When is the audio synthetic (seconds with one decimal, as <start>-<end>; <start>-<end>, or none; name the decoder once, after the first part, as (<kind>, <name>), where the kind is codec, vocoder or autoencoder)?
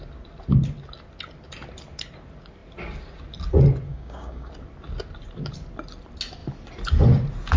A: 3.9-4.5 (codec, DAC)